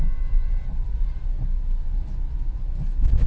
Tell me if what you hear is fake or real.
real